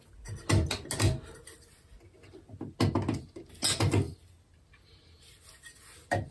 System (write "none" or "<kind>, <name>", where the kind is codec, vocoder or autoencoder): none